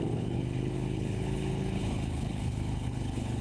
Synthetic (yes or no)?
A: yes